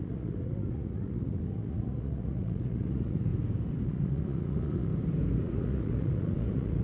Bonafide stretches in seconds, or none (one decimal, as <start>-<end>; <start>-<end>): 3.3-3.8; 4.9-5.4